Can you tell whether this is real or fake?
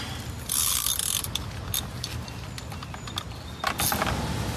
real